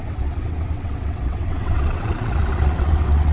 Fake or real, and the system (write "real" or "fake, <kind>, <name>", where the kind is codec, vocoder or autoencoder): fake, vocoder, WaveNeXt